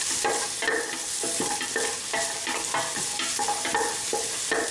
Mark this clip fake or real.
real